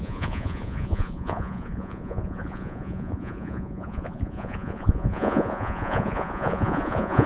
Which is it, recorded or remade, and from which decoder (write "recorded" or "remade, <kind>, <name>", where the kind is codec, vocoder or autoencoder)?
remade, vocoder, Vocos